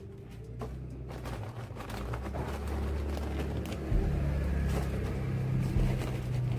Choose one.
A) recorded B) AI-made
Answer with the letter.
A